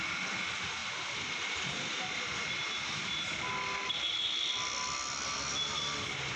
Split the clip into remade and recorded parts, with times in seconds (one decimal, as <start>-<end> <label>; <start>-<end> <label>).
0.0-6.4 recorded